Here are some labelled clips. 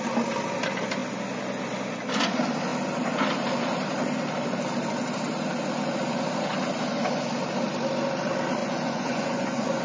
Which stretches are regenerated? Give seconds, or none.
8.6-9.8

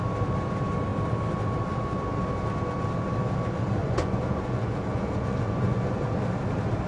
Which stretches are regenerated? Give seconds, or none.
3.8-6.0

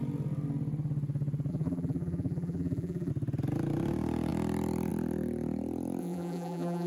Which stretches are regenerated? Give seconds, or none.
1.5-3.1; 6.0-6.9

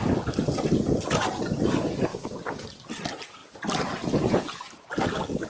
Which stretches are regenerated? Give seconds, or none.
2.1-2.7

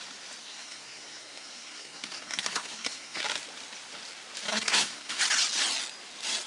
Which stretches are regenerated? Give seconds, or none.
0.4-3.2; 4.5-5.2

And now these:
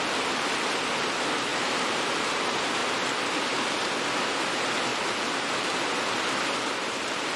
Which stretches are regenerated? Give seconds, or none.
1.5-2.0; 6.8-7.4

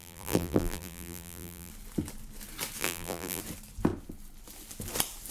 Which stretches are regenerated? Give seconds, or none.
0.0-1.7; 2.8-3.4